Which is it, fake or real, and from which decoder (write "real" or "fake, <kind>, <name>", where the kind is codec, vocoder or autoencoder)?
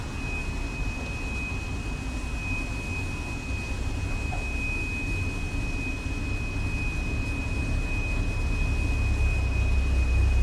real